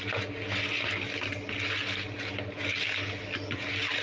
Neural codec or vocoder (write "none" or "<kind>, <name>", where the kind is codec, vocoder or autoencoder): none